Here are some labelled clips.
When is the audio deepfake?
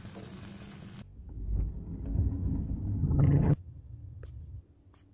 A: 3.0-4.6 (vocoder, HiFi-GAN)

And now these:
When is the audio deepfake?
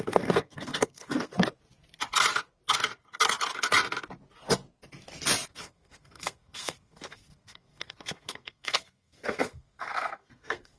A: 0.0-1.3 (codec, SNAC); 5.5-10.8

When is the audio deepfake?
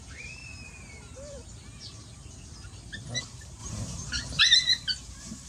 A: 0.0-0.4 (vocoder, BigVGAN v2); 3.2-5.5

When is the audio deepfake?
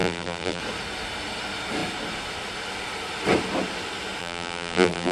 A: 0.0-0.6 (vocoder, BigVGAN v2); 4.2-5.1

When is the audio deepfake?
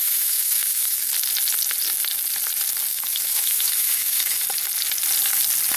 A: 0.0-1.1 (autoencoder, DAC-VAE); 2.9-4.4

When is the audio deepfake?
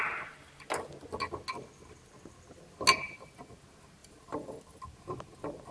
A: 4.0-4.6 (vocoder, BigVGAN v2)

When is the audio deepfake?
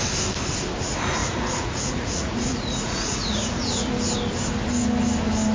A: 1.2-3.9 (vocoder, Vocos)